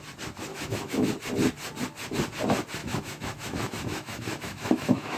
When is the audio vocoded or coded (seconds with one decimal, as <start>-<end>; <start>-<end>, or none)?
0.5-1.1; 2.8-5.2